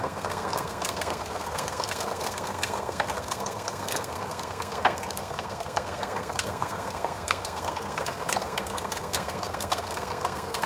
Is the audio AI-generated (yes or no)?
yes